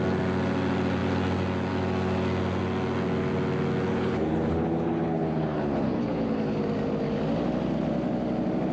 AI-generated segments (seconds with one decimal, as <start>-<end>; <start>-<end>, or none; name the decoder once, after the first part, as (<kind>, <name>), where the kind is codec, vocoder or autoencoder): 3.9-6.6 (codec, HILCodec)